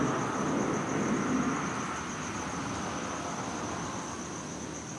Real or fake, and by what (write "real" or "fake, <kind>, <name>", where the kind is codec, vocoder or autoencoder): real